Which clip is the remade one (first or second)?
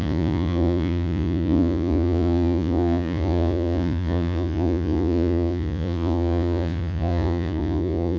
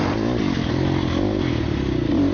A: first